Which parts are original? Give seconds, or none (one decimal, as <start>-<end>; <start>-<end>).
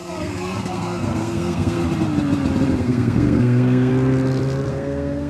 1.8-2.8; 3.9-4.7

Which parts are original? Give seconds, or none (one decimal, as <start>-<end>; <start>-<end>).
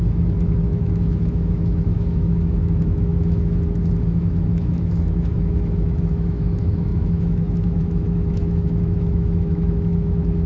none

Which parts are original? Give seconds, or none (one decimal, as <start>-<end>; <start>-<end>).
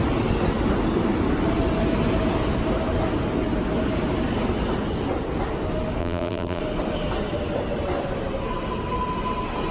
0.0-6.0; 6.6-9.7